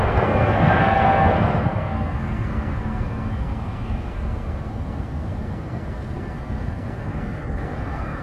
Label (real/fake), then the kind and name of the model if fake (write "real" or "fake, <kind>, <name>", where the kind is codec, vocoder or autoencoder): fake, codec, SNAC